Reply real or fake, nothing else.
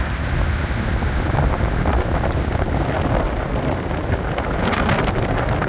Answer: real